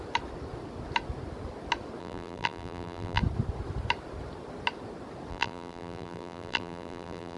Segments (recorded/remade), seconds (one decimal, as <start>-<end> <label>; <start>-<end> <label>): 0.0-2.0 recorded; 2.0-3.2 remade; 3.2-5.3 recorded; 5.3-7.4 remade